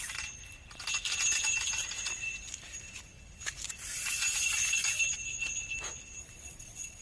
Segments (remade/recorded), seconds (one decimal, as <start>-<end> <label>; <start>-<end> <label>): 0.0-6.2 recorded; 6.2-7.0 remade